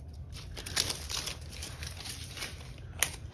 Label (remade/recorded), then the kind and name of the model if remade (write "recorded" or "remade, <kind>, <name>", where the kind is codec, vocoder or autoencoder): recorded